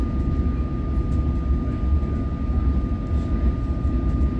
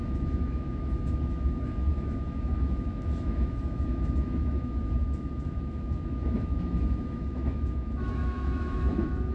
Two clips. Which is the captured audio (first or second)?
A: first